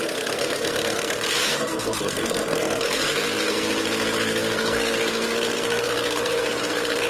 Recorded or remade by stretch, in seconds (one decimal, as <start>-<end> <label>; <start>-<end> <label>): 0.0-7.1 remade